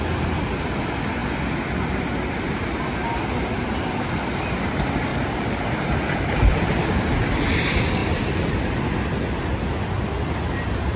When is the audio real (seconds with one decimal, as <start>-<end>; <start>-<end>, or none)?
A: 0.0-5.1; 6.9-8.0; 8.8-11.0